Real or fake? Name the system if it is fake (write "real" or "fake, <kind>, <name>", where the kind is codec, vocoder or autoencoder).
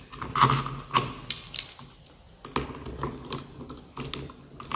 real